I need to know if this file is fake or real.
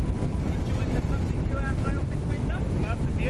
real